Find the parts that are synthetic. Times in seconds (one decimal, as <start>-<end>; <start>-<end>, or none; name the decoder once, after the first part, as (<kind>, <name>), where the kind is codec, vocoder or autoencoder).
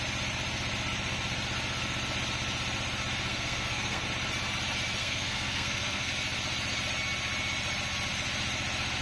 3.3-4.0 (codec, SNAC); 5.0-6.1